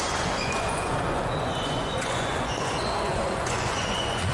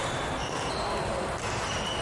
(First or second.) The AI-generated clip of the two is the first